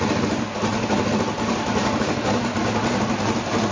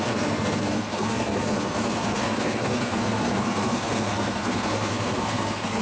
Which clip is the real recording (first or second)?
first